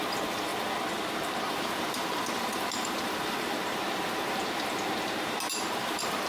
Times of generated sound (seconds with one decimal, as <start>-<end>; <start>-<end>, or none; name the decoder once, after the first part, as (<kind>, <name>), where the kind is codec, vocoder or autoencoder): 0.0-0.5 (vocoder, BigVGAN v2); 1.1-6.3